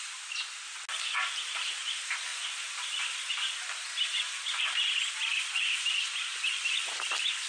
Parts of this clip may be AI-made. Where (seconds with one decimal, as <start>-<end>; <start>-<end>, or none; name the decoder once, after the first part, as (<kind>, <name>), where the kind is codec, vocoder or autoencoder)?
none